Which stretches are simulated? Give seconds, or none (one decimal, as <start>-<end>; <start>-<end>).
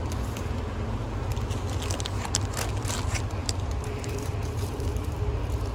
3.4-5.3